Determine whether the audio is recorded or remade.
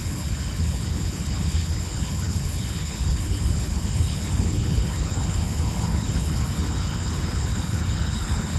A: remade